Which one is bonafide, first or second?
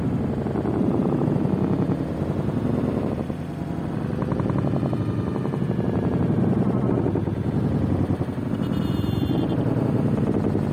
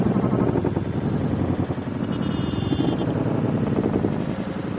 first